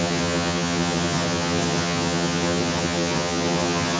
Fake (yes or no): yes